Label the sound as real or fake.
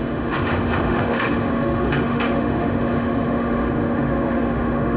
fake